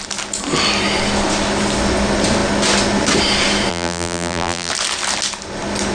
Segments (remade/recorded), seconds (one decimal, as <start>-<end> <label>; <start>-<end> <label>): 0.0-3.7 recorded; 3.7-4.7 remade; 4.7-5.9 recorded